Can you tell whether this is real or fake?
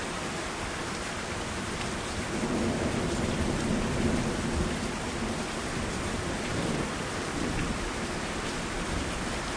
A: fake